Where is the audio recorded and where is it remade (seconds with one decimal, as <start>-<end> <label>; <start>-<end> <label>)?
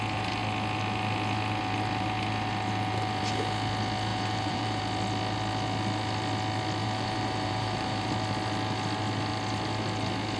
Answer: 0.0-4.1 recorded; 4.1-4.8 remade; 4.8-6.8 recorded; 6.8-8.1 remade; 8.1-10.4 recorded